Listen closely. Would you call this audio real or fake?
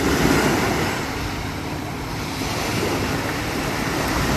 real